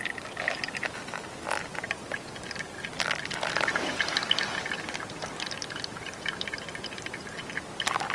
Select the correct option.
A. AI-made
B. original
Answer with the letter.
B